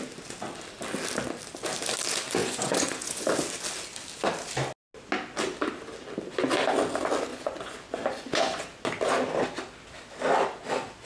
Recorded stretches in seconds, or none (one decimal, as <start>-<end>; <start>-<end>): 0.0-2.4; 3.3-7.3; 8.6-11.1